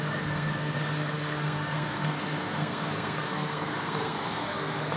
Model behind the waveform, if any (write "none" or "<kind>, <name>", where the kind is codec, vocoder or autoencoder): codec, SNAC